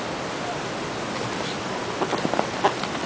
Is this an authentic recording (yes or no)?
yes